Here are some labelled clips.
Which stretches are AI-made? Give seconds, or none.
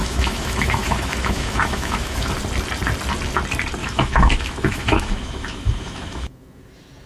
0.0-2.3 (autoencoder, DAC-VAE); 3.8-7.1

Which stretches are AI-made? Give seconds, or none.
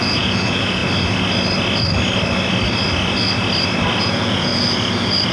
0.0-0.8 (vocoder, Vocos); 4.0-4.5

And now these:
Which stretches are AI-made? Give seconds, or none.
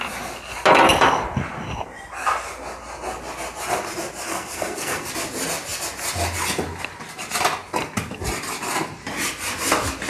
4.3-5.1 (codec, SNAC)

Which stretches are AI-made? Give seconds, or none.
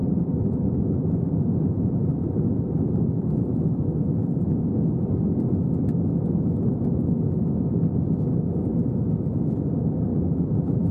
0.0-0.7 (vocoder, BigVGAN v2); 10.1-10.9